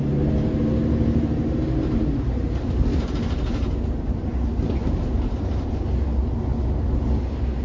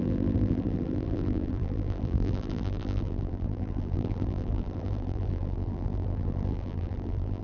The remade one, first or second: second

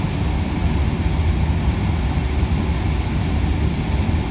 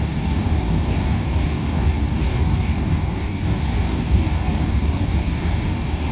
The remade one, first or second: second